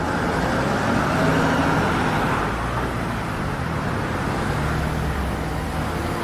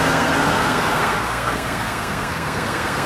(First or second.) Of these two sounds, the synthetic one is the second